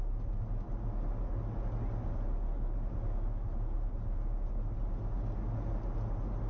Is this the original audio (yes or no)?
yes